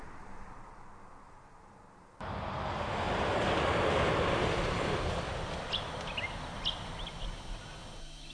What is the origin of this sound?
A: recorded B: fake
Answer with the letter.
A